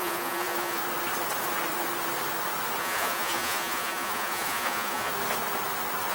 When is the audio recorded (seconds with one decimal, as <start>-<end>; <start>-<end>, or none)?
0.8-2.8; 5.1-6.1